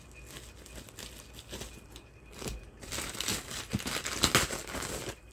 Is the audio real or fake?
real